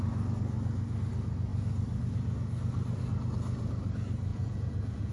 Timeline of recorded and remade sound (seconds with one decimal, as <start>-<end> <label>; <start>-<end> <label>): 0.0-4.3 recorded; 4.3-5.1 remade